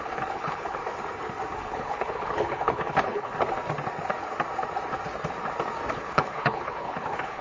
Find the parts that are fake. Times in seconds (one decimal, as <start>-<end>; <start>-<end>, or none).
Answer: 0.0-0.8; 1.6-3.3; 5.9-7.4